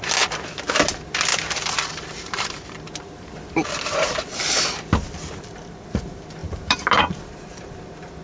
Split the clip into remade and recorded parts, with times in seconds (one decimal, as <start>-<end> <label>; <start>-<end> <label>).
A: 0.0-6.4 recorded; 6.4-7.2 remade; 7.2-8.2 recorded